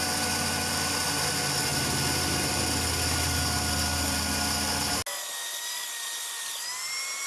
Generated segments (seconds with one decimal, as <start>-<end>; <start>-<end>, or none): none